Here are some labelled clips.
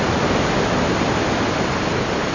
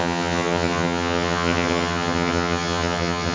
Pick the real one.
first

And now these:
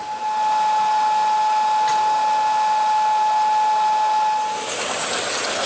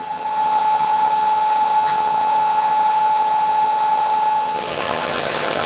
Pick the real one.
first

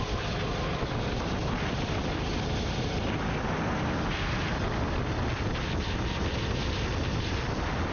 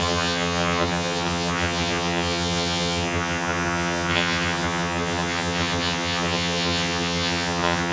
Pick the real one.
first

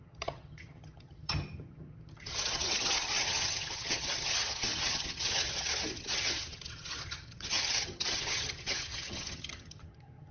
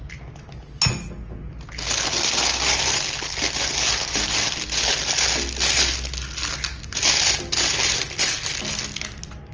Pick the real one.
second